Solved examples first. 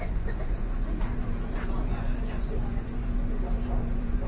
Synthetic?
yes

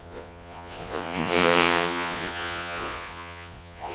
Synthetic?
yes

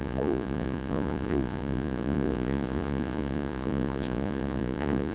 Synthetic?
yes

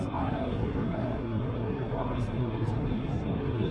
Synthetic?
yes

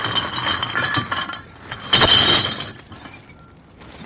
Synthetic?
no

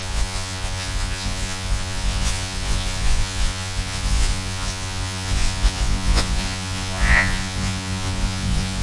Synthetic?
yes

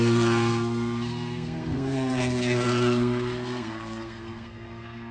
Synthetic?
yes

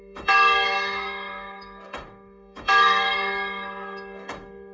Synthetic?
yes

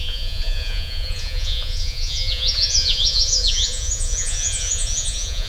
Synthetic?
yes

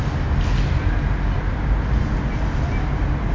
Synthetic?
no